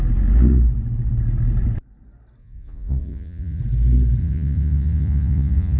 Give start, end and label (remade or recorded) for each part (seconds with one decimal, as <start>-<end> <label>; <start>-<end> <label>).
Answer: 0.0-2.4 recorded; 2.4-3.6 remade; 3.6-4.2 recorded; 4.2-5.8 remade